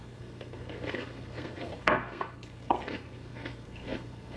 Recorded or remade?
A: remade